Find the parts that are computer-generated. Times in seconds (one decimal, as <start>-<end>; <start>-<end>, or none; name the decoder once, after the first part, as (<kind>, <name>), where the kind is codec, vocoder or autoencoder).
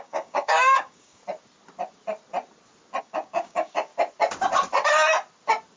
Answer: 0.0-1.2 (codec, DAC); 3.0-3.9